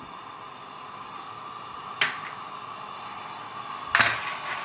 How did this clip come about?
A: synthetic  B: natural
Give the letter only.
B